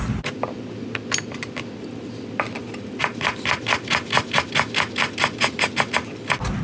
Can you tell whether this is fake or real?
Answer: real